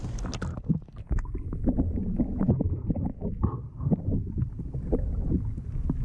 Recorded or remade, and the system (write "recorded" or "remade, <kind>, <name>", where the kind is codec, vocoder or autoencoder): recorded